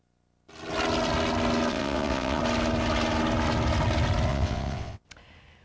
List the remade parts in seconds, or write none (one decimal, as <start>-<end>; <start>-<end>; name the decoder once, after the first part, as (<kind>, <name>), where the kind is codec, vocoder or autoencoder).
1.7-2.4 (vocoder, WaveNeXt); 4.3-5.0